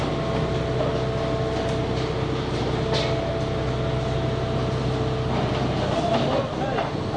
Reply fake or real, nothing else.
real